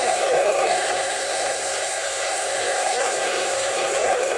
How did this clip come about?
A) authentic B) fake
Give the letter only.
B